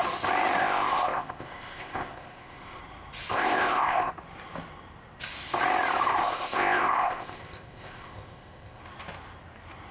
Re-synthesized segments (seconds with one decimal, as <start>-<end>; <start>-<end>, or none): 0.6-2.8; 3.3-4.1; 6.2-8.8